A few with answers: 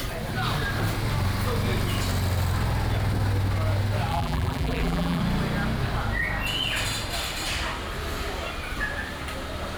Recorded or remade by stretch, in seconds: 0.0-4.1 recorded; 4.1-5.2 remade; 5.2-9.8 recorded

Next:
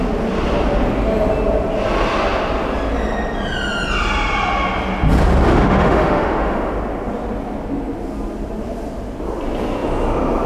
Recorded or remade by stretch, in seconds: 0.0-5.5 recorded; 5.5-6.7 remade; 6.7-10.5 recorded

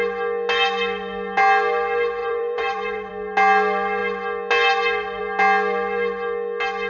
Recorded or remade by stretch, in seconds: 0.0-2.2 recorded; 2.2-3.1 remade; 3.1-6.9 recorded

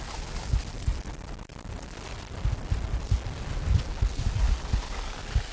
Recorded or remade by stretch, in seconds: 0.0-5.5 recorded

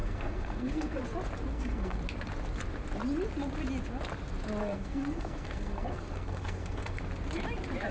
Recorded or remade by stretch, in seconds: 0.0-1.0 remade; 1.0-1.5 recorded; 1.5-2.0 remade; 2.0-4.6 recorded; 4.6-7.0 remade; 7.0-7.9 recorded

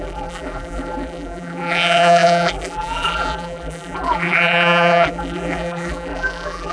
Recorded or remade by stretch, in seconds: 0.0-6.7 remade

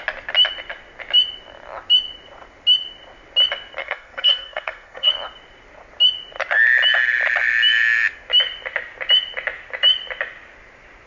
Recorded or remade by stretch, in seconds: 0.0-3.8 recorded; 3.8-5.1 remade; 5.1-11.1 recorded

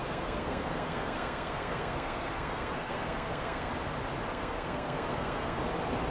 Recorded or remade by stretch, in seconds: 0.0-3.7 remade; 3.7-4.2 recorded; 4.2-5.6 remade; 5.6-6.1 recorded